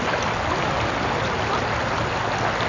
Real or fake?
real